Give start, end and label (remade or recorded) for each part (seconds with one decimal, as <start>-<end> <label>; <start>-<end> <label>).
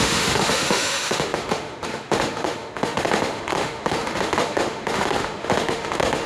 0.0-6.3 remade